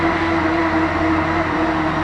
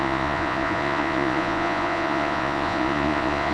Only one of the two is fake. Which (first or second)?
second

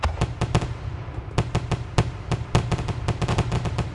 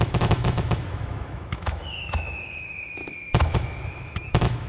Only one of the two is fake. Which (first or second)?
second